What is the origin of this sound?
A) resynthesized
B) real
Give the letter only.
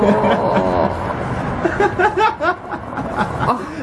B